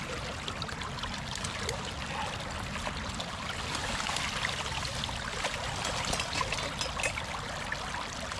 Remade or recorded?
recorded